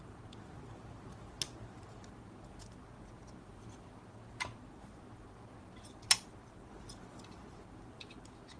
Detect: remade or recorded recorded